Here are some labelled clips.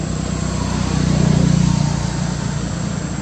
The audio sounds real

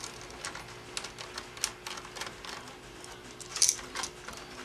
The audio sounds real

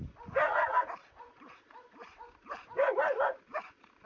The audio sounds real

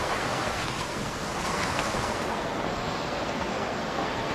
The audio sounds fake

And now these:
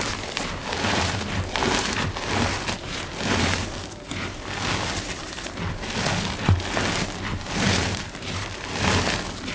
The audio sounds real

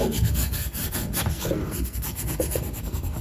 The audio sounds fake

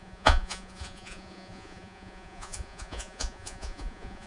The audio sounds fake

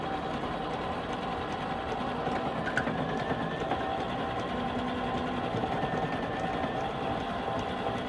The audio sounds real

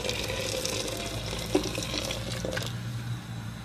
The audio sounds real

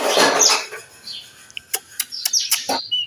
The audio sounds real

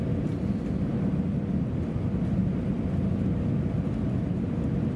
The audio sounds real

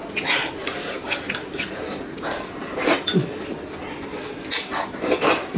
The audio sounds real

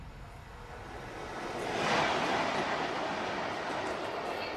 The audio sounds real